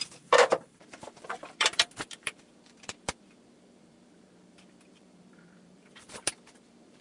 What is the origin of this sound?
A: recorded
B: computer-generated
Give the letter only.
B